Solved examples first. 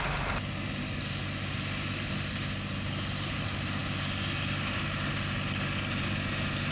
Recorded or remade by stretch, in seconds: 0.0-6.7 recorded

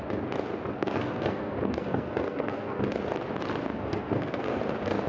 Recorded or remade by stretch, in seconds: 0.0-0.7 recorded; 0.7-2.8 remade; 2.8-3.7 recorded; 3.7-4.6 remade; 4.6-5.1 recorded

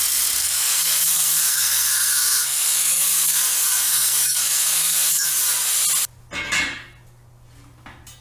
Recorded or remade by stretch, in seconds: 0.0-0.4 recorded; 0.4-5.3 remade; 5.3-8.2 recorded

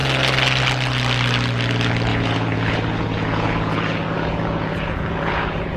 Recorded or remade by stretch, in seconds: 0.0-2.1 recorded; 2.1-5.8 remade

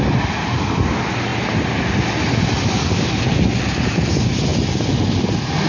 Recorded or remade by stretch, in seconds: 0.0-5.7 recorded